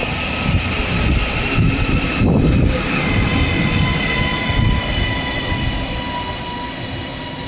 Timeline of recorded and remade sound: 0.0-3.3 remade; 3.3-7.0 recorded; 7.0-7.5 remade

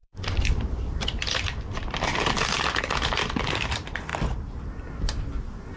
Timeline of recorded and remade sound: 0.0-4.1 remade; 4.1-5.8 recorded